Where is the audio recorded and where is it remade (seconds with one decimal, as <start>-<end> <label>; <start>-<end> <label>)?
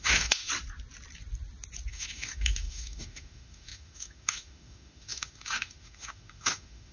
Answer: 0.0-0.5 remade; 0.5-1.9 recorded; 1.9-6.9 remade